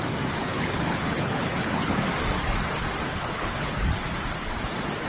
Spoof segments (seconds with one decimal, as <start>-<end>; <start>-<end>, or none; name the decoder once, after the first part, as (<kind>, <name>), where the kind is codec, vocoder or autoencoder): 0.4-2.1 (codec, HILCodec); 3.1-3.7